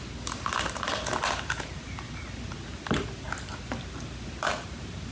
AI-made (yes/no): no